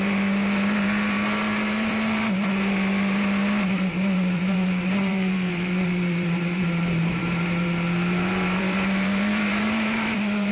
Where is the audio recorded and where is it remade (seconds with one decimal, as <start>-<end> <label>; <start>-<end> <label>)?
0.0-10.5 remade